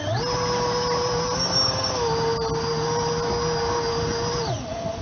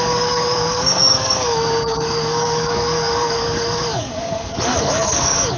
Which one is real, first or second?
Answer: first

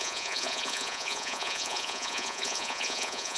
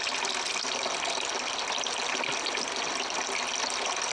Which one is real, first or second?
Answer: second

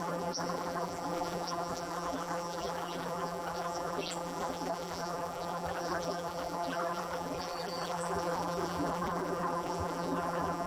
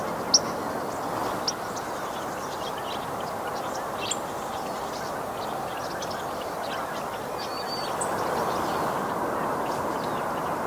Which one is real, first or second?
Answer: second